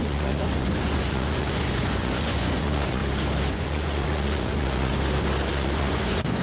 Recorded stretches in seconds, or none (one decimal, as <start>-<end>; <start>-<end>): 3.0-3.5; 4.9-5.5